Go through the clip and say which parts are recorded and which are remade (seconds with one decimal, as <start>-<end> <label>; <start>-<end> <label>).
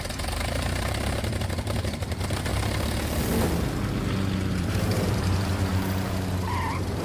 0.0-2.5 remade; 2.5-4.5 recorded; 4.5-7.0 remade